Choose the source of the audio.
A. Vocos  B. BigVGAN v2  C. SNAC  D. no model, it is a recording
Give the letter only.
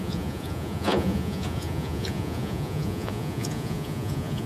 A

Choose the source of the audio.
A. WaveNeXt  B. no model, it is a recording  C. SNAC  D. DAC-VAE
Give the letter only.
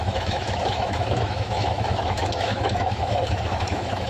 D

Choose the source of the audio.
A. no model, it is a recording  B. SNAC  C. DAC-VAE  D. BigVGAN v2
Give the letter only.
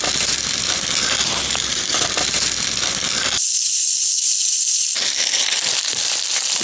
D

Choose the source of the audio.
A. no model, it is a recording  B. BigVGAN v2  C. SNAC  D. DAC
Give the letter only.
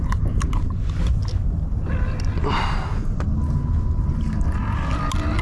A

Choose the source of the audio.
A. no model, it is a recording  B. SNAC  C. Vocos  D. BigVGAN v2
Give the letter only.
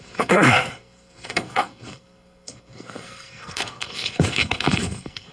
B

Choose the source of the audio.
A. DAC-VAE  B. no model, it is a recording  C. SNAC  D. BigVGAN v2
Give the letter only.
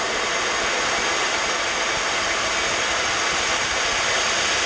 B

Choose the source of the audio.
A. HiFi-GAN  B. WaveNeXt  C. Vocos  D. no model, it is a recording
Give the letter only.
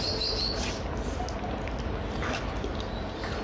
D